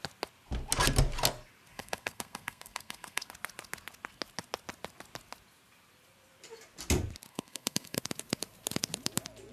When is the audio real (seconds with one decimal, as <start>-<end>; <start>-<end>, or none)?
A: 0.0-1.7; 3.3-7.3; 8.0-9.5